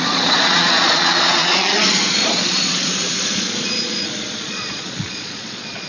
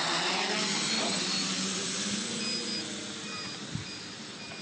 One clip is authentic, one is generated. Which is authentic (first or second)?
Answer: second